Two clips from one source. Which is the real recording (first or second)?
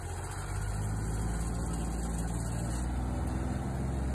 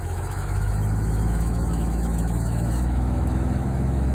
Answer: first